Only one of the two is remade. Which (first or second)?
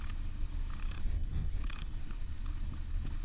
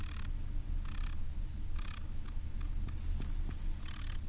first